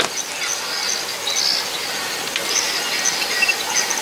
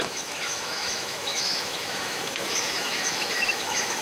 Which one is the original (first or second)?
first